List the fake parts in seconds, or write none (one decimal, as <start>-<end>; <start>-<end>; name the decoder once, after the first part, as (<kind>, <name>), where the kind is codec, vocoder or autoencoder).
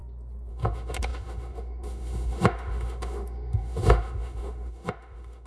0.5-5.5 (autoencoder, DAC-VAE)